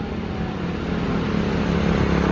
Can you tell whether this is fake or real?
real